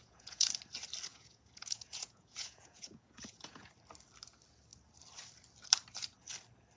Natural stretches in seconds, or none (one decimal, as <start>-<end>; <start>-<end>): 0.5-1.1; 3.7-6.8